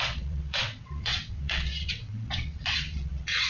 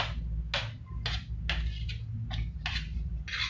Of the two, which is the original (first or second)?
second